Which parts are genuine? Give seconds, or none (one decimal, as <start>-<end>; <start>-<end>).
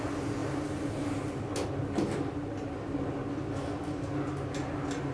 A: 0.0-5.1